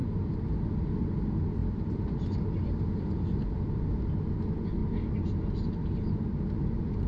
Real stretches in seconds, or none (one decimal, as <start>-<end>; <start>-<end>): 0.9-1.6; 3.9-7.1